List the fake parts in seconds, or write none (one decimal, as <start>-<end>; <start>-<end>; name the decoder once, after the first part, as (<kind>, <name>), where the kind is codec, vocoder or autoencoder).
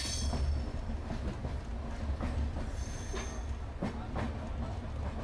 none